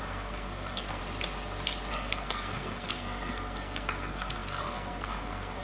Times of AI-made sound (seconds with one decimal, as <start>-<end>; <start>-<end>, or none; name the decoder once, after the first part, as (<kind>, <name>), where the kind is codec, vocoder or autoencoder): 0.0-1.0 (codec, SNAC); 1.9-5.6